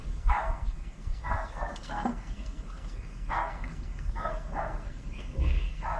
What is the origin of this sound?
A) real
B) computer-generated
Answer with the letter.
B